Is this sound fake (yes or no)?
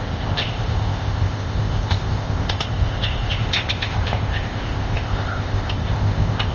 yes